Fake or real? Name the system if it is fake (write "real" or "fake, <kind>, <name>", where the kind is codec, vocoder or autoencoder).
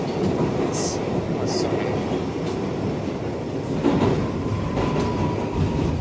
real